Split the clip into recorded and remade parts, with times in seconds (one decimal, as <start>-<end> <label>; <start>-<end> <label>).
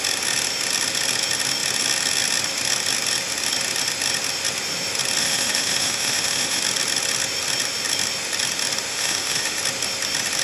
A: 0.0-5.2 recorded; 5.2-6.6 remade; 6.6-8.9 recorded; 8.9-9.6 remade; 9.6-10.4 recorded